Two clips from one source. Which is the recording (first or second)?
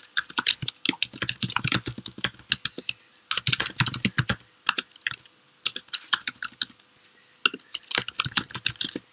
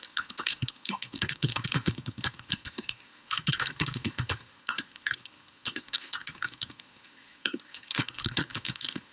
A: first